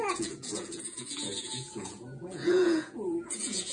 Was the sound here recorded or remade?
remade